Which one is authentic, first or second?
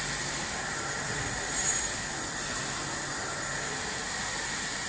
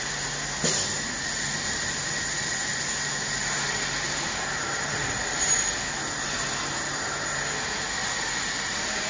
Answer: second